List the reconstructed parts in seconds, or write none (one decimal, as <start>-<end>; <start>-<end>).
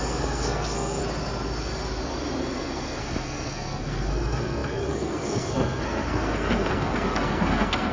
0.0-1.0; 2.4-7.9